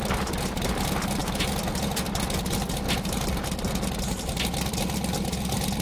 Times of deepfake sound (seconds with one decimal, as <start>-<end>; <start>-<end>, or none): none